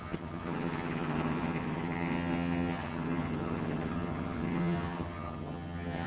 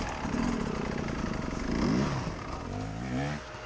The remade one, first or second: first